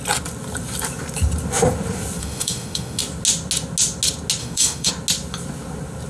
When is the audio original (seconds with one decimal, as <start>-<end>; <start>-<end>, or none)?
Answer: 0.0-2.2; 3.0-4.4; 4.9-6.1